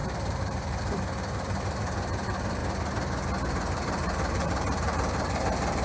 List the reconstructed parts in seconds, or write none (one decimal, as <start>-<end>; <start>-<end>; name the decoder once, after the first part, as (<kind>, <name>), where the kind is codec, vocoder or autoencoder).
0.0-2.6 (vocoder, BigVGAN v2); 3.5-5.8